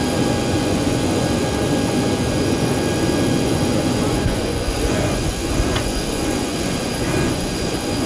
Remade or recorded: remade